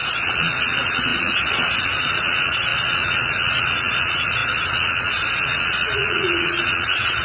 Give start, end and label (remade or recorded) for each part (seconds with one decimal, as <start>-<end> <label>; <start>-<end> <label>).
0.0-7.2 remade